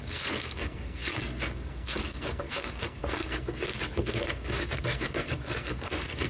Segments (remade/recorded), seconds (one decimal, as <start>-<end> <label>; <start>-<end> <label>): 0.0-6.3 remade

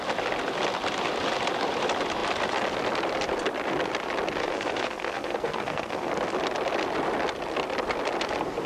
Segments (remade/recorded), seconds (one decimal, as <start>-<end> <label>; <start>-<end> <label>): 0.0-4.4 recorded; 4.4-6.1 remade; 6.1-8.7 recorded

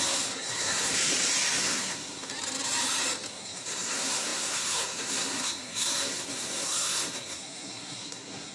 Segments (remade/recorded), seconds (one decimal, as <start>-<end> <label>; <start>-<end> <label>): 0.0-1.1 remade; 1.1-1.6 recorded; 1.6-2.3 remade; 2.3-3.3 recorded; 3.3-8.5 remade